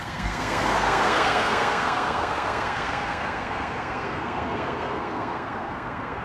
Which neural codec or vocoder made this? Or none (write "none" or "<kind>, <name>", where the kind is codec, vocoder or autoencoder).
codec, SNAC